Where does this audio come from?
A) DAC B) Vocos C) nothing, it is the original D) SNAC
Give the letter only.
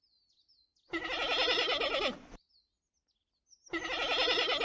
C